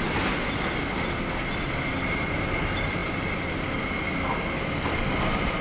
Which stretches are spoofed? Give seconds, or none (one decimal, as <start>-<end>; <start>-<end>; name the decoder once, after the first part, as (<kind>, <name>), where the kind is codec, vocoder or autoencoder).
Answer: none